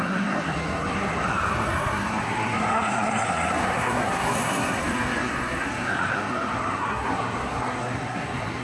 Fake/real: fake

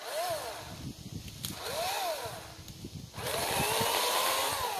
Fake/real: real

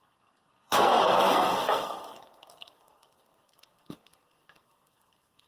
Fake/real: fake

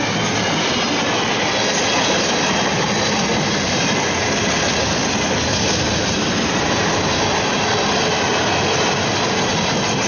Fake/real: real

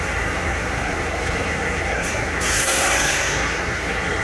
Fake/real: fake